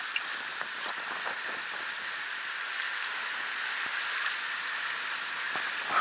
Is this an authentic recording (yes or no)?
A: yes